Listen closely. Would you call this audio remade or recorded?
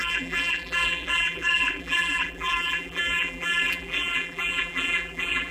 remade